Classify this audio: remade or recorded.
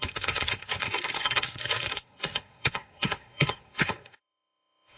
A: remade